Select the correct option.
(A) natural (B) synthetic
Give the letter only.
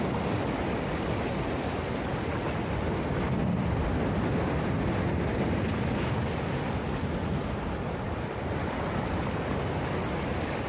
A